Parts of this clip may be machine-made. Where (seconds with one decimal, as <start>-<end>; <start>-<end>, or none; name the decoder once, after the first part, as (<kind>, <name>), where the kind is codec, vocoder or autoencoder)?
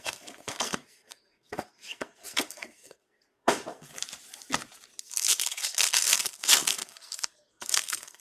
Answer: 0.0-3.9 (codec, SNAC); 5.0-8.2